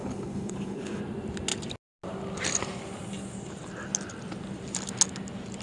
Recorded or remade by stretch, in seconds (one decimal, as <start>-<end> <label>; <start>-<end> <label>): 0.0-1.0 remade; 1.0-5.6 recorded